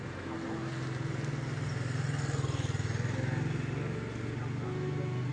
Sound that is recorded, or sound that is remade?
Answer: recorded